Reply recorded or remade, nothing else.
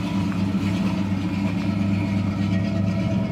recorded